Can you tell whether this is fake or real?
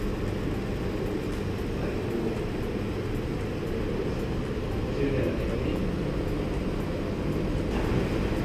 real